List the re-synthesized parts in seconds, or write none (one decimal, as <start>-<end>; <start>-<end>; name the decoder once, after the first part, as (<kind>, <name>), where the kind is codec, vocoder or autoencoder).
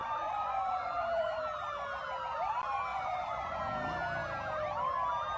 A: 0.0-1.4 (vocoder, Vocos); 2.9-3.6